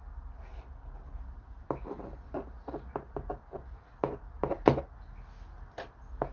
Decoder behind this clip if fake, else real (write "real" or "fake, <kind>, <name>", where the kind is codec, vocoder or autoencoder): real